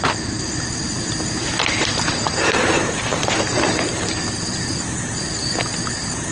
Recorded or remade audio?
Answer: remade